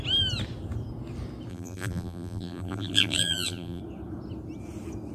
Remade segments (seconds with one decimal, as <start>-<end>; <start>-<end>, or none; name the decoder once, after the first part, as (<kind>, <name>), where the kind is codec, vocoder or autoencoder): 1.5-3.8 (vocoder, BigVGAN v2)